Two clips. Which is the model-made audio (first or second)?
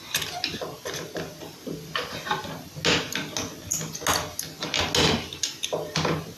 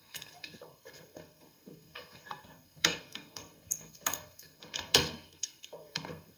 second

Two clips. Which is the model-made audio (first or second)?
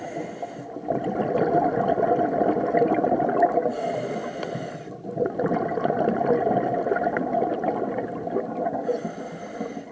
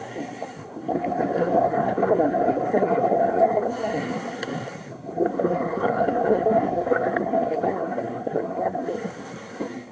second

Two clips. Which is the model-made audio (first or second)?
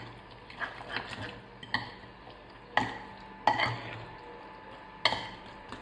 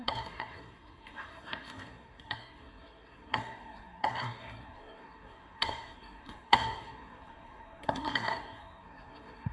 second